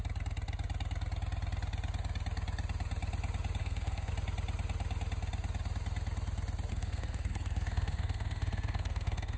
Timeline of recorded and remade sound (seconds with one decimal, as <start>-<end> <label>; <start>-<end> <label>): 0.0-3.6 recorded; 3.6-4.1 remade; 4.1-6.7 recorded; 6.7-9.4 remade